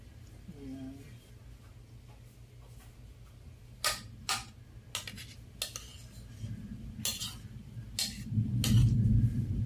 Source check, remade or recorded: recorded